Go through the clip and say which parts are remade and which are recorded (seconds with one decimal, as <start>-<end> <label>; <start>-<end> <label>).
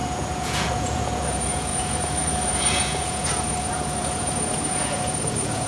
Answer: 0.0-5.7 remade